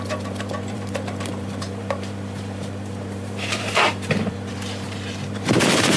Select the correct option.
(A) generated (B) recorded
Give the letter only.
A